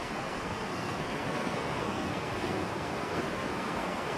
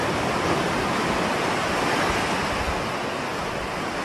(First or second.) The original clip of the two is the second